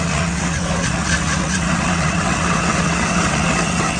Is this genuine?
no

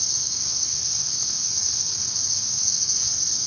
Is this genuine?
no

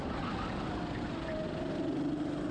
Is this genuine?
yes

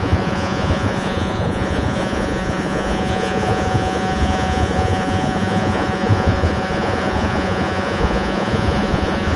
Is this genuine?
no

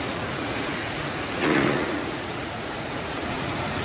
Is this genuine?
no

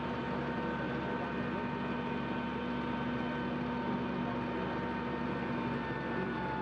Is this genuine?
yes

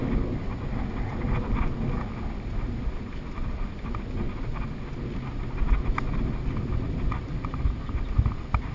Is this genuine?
yes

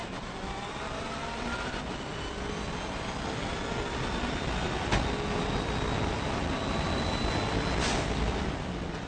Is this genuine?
yes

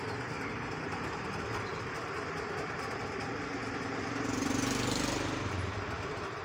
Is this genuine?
yes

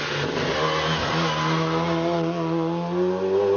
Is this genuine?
yes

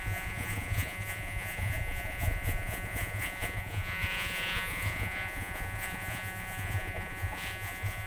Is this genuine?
no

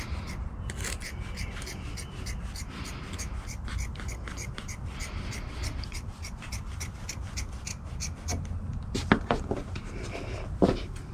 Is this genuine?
yes